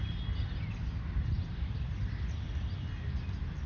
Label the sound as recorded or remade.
recorded